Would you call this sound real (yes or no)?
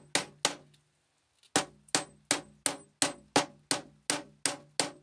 yes